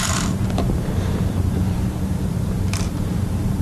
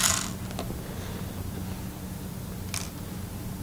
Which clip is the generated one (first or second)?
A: first